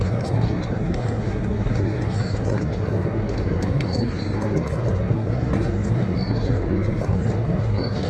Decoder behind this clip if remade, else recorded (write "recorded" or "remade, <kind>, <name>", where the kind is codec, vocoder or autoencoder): remade, codec, SNAC